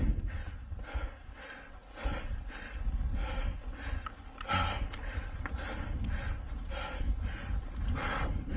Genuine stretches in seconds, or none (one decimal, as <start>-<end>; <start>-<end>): 0.0-8.6